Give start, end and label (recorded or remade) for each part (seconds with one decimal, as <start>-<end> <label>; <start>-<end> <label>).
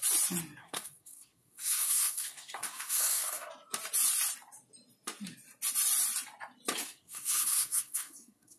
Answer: 0.0-0.6 recorded; 0.6-3.5 remade; 3.5-6.8 recorded; 6.8-8.6 remade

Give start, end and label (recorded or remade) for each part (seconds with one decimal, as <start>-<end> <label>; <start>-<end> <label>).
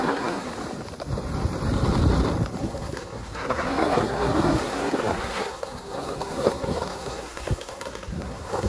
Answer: 0.0-0.5 remade; 0.5-2.6 recorded; 2.6-8.7 remade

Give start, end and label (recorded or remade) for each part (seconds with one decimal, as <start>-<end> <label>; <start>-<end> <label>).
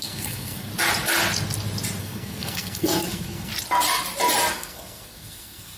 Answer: 0.0-0.7 remade; 0.7-2.0 recorded; 2.0-3.5 remade; 3.5-4.5 recorded; 4.5-5.8 remade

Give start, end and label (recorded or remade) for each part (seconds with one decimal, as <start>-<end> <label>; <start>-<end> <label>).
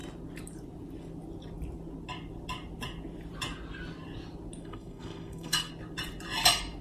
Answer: 0.0-4.6 recorded; 4.6-5.7 remade; 5.7-6.8 recorded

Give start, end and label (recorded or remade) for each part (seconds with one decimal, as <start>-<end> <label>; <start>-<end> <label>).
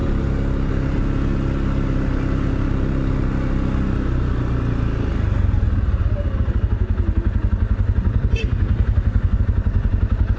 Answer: 0.0-8.4 recorded; 8.4-9.4 remade; 9.4-10.4 recorded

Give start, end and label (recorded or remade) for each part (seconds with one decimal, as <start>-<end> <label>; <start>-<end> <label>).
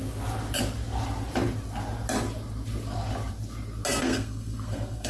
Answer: 0.0-4.0 recorded; 4.0-5.1 remade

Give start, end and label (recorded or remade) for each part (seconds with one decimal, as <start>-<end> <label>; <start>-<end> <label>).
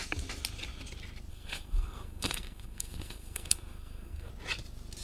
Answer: 0.0-1.3 recorded; 1.3-4.3 remade; 4.3-5.0 recorded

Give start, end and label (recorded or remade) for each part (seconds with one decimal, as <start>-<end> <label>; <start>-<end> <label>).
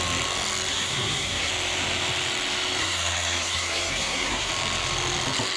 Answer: 0.0-0.7 recorded; 0.7-1.5 remade; 1.5-2.8 recorded; 2.8-4.5 remade; 4.5-5.6 recorded